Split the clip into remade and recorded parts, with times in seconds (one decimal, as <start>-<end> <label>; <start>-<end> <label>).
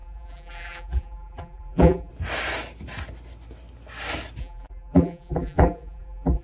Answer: 0.0-2.1 remade; 2.1-4.4 recorded; 4.4-6.4 remade